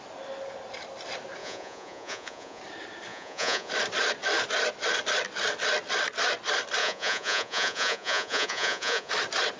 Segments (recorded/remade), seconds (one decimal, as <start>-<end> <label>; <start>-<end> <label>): 0.0-1.4 recorded; 1.4-2.6 remade; 2.6-3.1 recorded; 3.1-3.7 remade; 3.7-6.8 recorded; 6.8-9.1 remade; 9.1-9.6 recorded

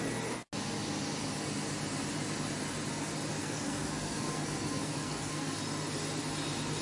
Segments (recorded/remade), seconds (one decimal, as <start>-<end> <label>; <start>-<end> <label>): 0.0-3.4 recorded; 3.4-5.6 remade; 5.6-6.8 recorded

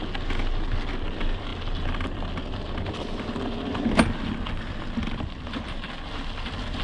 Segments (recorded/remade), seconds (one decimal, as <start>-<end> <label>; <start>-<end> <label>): 0.0-6.8 recorded